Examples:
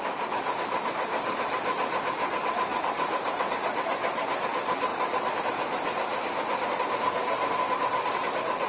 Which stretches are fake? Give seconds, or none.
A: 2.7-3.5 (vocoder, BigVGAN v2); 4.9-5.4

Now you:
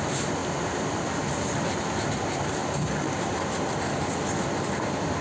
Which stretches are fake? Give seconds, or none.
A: 0.4-1.8 (vocoder, BigVGAN v2); 2.6-4.4